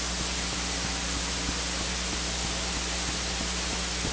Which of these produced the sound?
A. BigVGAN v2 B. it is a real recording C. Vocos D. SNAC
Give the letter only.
B